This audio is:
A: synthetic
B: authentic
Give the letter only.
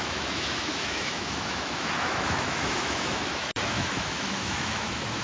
A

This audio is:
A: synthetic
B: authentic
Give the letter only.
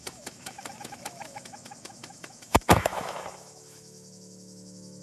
A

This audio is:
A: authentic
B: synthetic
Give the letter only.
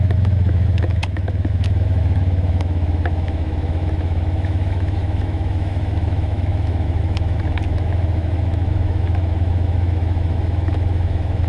B